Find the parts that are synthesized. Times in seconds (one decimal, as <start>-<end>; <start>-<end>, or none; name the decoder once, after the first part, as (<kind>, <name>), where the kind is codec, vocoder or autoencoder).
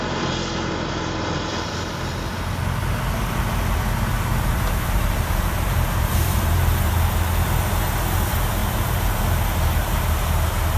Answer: 4.1-6.9 (vocoder, BigVGAN v2); 8.6-10.1